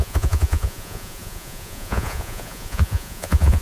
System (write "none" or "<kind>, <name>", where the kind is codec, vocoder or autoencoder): vocoder, Vocos